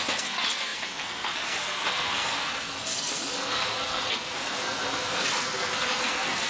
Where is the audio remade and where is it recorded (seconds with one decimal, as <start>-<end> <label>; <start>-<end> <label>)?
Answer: 0.0-6.5 remade

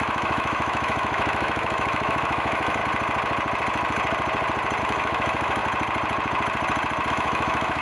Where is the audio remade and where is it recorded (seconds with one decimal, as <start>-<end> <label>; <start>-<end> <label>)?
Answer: 0.0-2.8 remade; 2.8-4.8 recorded; 4.8-5.6 remade; 5.6-7.1 recorded; 7.1-7.8 remade

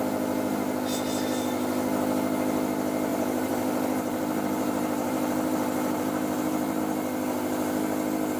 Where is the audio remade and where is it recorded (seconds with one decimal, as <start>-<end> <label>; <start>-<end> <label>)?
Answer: 0.0-3.1 recorded; 3.1-6.8 remade; 6.8-8.4 recorded

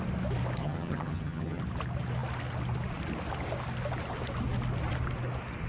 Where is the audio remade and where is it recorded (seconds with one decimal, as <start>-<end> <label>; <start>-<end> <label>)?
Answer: 0.0-0.6 recorded; 0.6-1.6 remade; 1.6-5.7 recorded

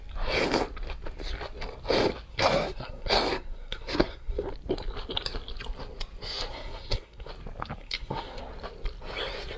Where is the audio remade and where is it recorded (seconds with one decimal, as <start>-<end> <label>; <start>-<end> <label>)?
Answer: 0.0-2.3 recorded; 2.3-4.5 remade; 4.5-6.5 recorded; 6.5-7.3 remade; 7.3-7.8 recorded; 7.8-8.4 remade; 8.4-9.6 recorded